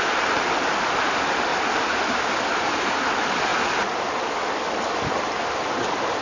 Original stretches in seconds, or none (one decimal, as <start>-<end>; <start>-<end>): 0.0-6.2